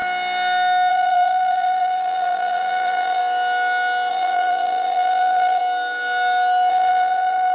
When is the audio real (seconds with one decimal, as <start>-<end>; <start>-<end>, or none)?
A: 0.0-0.9; 3.2-4.1; 5.6-6.7

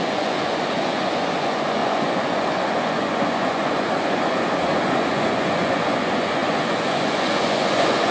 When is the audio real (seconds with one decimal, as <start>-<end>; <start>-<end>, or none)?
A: none

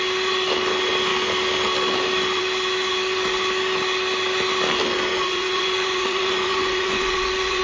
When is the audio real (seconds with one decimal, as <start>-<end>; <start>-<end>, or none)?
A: 0.0-5.1